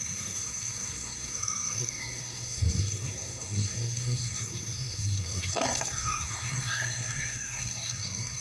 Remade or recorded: remade